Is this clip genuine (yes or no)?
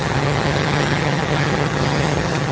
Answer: no